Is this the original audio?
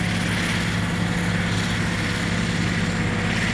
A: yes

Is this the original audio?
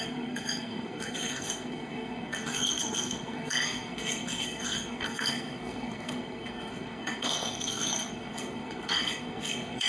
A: no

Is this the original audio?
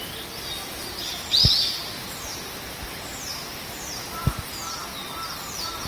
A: yes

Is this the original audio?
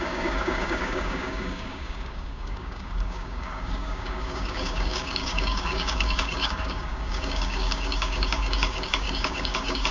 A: no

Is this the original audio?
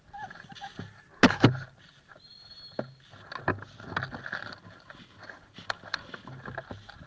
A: yes